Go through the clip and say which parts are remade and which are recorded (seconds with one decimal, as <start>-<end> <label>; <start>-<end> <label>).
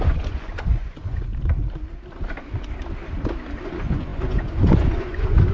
0.0-1.3 remade; 1.3-3.6 recorded; 3.6-5.5 remade